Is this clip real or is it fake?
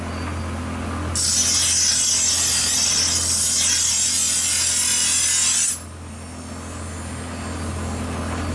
real